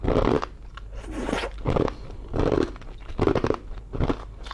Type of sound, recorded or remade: recorded